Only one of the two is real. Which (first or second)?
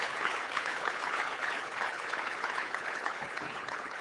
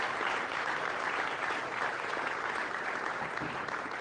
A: second